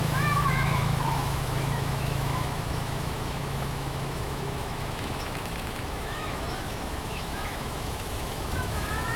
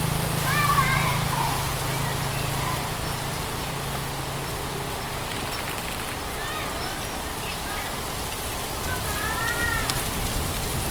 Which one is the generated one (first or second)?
first